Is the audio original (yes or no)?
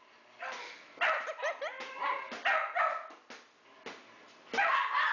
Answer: yes